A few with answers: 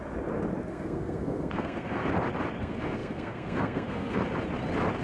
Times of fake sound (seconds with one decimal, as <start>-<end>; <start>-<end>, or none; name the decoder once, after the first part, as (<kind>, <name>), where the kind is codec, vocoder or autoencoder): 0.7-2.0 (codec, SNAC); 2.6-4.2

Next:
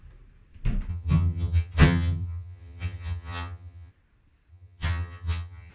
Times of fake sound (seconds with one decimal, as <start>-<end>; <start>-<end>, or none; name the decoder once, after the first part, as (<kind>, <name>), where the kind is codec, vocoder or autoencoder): 0.9-3.9 (vocoder, HiFi-GAN); 4.5-5.7

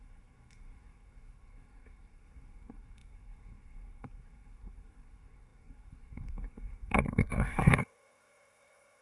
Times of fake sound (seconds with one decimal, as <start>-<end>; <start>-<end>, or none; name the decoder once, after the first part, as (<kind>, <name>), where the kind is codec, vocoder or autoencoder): 0.0-9.0 (codec, SNAC)

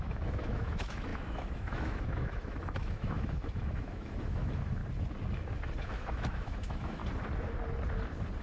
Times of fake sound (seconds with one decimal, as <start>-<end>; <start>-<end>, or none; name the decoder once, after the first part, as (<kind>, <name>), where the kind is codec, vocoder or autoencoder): 0.0-4.8 (autoencoder, DAC-VAE); 5.8-7.0

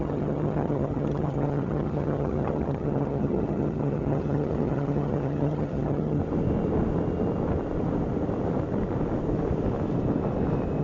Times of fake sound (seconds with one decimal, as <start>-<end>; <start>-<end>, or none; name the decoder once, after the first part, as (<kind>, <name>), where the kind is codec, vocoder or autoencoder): 0.0-6.2 (vocoder, HiFi-GAN)

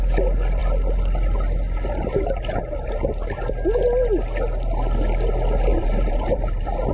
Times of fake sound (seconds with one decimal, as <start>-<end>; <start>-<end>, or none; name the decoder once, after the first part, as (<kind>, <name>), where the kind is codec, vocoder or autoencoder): 5.7-6.9 (vocoder, BigVGAN v2)